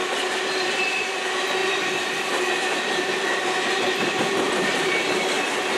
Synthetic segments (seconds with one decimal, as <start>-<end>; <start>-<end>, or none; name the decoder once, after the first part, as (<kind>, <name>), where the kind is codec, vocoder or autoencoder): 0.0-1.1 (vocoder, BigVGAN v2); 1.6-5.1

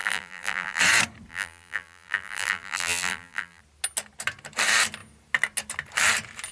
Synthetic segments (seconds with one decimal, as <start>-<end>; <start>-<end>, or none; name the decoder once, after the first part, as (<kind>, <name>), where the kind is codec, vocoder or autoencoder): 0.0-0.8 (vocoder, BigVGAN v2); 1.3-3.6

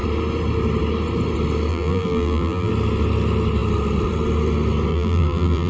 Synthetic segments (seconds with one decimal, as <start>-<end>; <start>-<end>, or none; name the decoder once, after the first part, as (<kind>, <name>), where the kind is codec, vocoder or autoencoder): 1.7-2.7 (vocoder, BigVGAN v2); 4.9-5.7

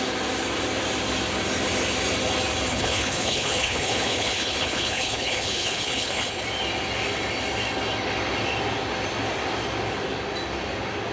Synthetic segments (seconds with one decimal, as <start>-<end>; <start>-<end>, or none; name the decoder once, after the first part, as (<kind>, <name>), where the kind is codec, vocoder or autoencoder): 2.7-6.4 (codec, HILCodec)

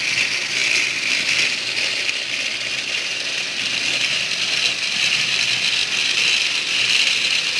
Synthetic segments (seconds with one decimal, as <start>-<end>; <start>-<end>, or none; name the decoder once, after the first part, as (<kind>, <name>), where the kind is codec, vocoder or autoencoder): none

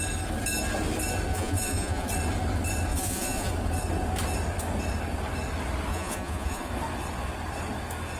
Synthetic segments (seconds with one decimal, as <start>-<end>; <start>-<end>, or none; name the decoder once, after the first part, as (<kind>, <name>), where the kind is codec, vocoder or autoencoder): 1.3-2.1 (vocoder, Vocos); 2.9-3.5; 5.9-6.7

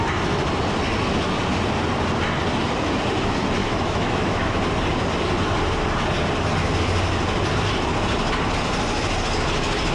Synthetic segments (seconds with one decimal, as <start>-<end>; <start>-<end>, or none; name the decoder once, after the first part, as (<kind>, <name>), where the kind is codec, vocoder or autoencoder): 3.6-4.6 (autoencoder, DAC-VAE)

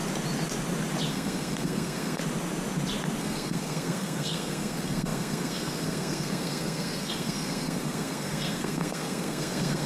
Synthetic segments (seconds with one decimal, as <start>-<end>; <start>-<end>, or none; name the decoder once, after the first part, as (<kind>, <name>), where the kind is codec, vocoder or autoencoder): 1.1-2.2 (codec, SNAC); 3.2-9.9